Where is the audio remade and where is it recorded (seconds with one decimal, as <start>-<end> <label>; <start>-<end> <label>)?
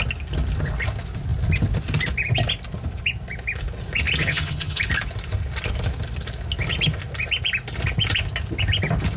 0.0-4.2 recorded; 4.2-4.8 remade; 4.8-9.2 recorded